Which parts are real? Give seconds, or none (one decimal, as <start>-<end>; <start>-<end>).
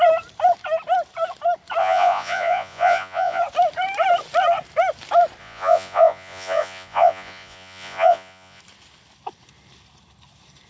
0.0-1.8; 3.4-5.4; 8.6-10.7